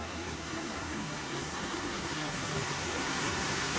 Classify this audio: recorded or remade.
remade